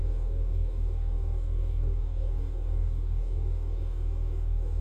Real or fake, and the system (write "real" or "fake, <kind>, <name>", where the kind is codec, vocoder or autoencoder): fake, codec, DAC